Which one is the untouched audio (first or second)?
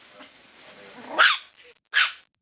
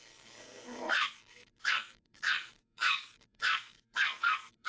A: first